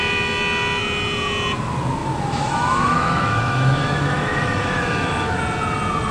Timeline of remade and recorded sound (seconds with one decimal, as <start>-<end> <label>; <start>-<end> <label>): 0.0-2.0 recorded; 2.0-5.4 remade; 5.4-6.1 recorded